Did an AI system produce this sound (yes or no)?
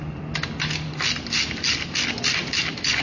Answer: no